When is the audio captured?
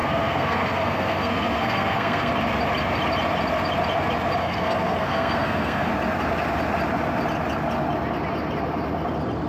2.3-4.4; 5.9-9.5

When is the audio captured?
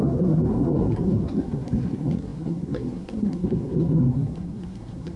none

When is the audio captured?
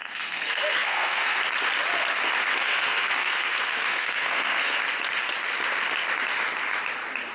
1.4-2.6; 4.8-7.3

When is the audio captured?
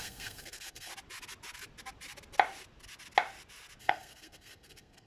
0.9-3.8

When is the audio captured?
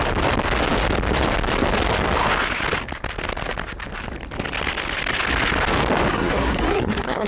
0.0-6.1